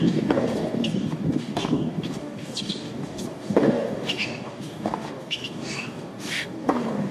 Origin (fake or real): fake